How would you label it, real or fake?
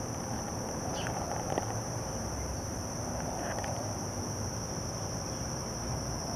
fake